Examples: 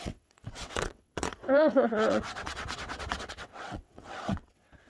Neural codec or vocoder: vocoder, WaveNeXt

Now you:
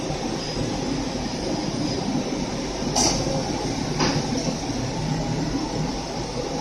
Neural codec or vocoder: none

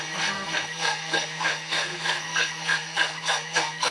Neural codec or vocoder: codec, SNAC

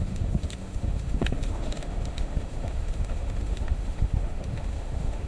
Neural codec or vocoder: autoencoder, DAC-VAE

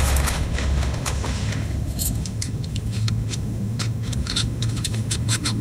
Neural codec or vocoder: autoencoder, DAC-VAE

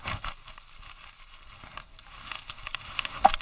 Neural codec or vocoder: none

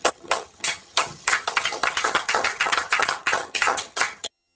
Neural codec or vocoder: vocoder, HiFi-GAN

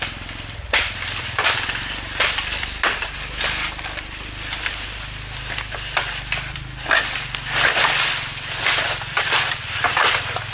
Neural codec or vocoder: vocoder, BigVGAN v2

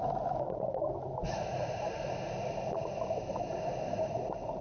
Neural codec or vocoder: none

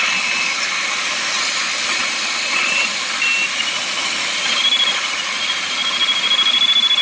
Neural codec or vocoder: none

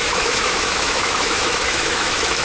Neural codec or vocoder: autoencoder, DAC-VAE